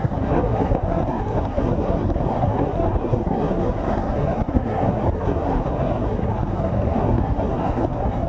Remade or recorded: remade